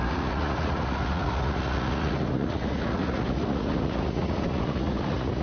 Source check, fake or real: fake